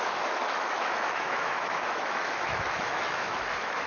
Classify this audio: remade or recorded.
remade